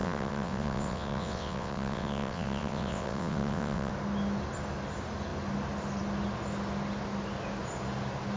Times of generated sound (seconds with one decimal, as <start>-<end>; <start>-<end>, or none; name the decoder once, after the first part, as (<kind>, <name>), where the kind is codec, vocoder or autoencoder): 0.0-3.9 (vocoder, WaveNeXt)